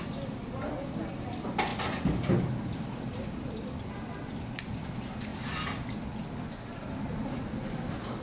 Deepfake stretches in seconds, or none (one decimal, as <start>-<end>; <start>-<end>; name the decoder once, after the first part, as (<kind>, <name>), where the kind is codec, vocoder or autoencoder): none